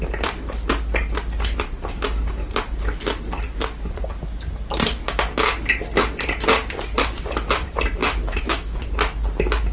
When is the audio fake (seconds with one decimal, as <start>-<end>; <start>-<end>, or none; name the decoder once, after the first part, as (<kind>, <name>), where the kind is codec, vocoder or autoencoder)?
8.0-8.9 (autoencoder, DAC-VAE)